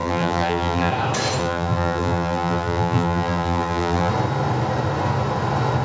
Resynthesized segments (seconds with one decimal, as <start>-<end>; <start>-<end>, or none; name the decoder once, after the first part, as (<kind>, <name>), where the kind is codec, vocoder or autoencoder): 0.0-0.9 (vocoder, BigVGAN v2); 1.4-4.1